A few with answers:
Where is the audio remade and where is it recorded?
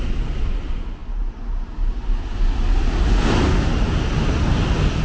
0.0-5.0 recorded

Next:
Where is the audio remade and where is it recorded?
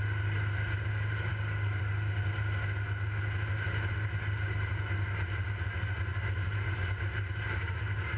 0.0-1.3 recorded; 1.3-1.8 remade; 1.8-8.2 recorded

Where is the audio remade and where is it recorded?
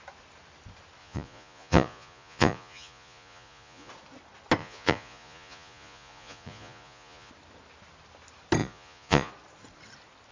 0.0-1.0 recorded; 1.0-3.9 remade; 3.9-4.6 recorded; 4.6-7.3 remade; 7.3-8.6 recorded; 8.6-9.3 remade; 9.3-10.3 recorded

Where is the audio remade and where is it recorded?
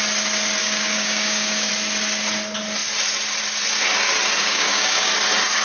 0.0-0.6 recorded; 0.6-1.7 remade; 1.7-4.4 recorded; 4.4-5.1 remade; 5.1-5.6 recorded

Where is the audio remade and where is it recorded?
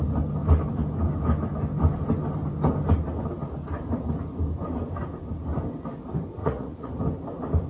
0.0-6.4 recorded; 6.4-6.9 remade; 6.9-7.7 recorded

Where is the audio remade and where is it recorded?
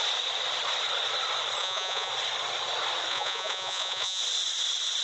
0.0-1.6 recorded; 1.6-2.1 remade; 2.1-3.1 recorded; 3.1-4.2 remade; 4.2-5.0 recorded